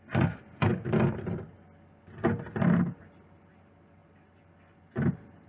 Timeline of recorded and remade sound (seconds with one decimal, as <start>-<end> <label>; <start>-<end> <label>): 0.0-5.5 recorded